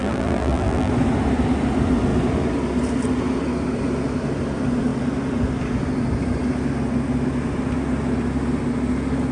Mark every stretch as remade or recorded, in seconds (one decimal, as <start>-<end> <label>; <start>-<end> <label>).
0.0-0.9 remade; 0.9-9.3 recorded